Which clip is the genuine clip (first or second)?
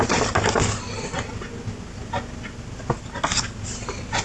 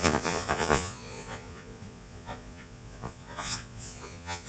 first